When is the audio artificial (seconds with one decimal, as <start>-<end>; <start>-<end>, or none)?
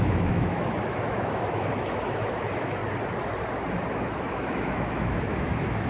0.0-2.8; 3.9-5.9